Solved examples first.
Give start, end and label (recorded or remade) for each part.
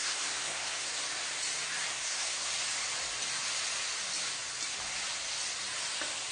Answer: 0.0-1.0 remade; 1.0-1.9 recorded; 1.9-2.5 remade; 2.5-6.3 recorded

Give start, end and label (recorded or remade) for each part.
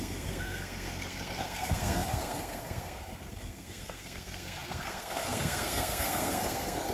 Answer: 0.0-6.9 remade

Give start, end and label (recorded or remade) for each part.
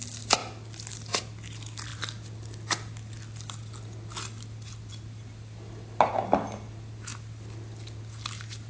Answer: 0.0-8.7 recorded